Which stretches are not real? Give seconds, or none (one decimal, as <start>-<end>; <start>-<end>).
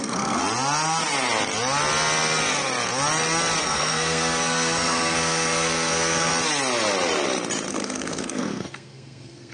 0.0-0.4; 3.6-6.3; 7.7-9.5